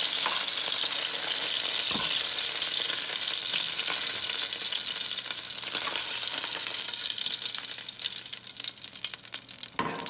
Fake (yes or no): no